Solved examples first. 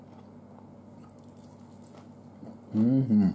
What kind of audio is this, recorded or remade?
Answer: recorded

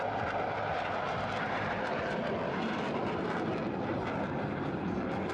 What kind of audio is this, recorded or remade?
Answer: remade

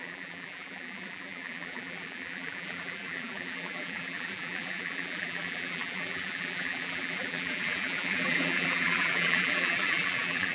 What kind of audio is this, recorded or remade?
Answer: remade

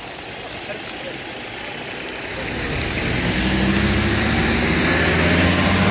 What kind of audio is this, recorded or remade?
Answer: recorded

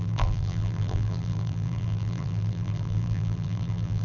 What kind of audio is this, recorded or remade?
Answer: remade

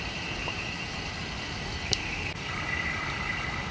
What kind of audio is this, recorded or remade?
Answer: remade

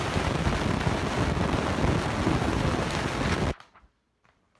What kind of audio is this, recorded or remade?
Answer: recorded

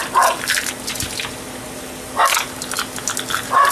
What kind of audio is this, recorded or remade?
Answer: recorded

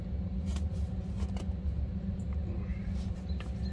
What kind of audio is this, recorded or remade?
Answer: recorded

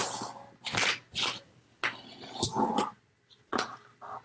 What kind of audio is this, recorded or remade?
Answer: recorded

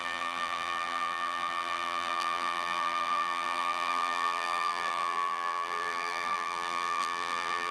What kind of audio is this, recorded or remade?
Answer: remade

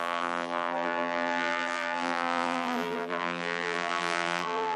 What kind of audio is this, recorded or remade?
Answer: remade